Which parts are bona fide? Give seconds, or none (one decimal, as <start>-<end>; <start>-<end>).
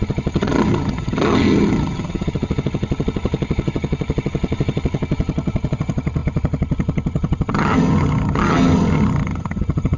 none